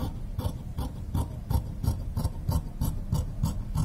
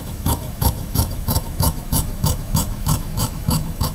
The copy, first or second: second